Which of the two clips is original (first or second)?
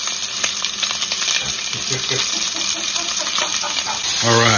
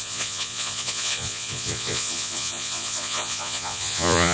first